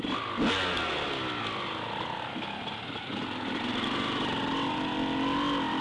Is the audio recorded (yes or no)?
yes